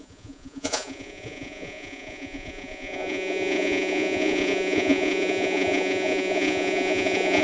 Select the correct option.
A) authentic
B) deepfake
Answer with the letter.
B